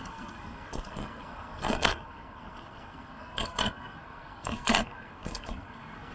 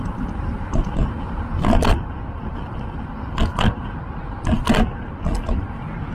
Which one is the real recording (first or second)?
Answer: second